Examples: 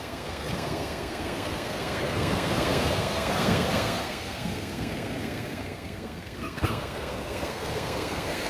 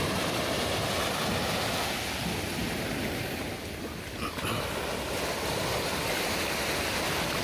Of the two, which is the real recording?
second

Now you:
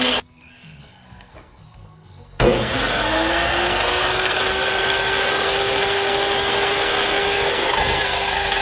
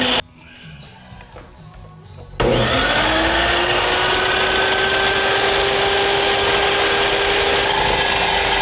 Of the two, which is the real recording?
second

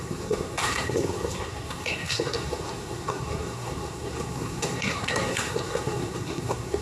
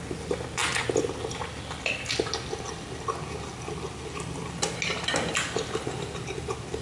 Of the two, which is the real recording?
second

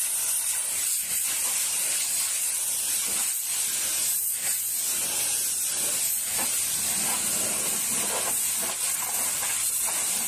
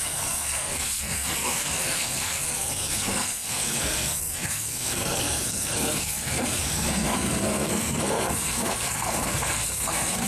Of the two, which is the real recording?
first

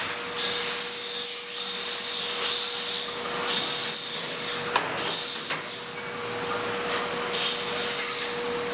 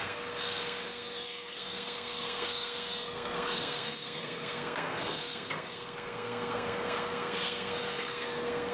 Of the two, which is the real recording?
first